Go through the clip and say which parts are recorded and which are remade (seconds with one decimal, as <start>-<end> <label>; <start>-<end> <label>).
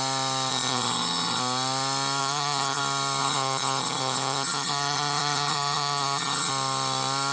0.0-0.5 recorded; 0.5-1.4 remade; 1.4-2.2 recorded; 2.2-2.8 remade; 2.8-3.2 recorded; 3.2-6.5 remade; 6.5-7.3 recorded